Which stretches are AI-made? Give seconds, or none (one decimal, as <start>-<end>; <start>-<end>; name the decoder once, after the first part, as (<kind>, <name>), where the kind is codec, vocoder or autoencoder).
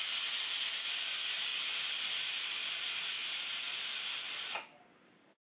none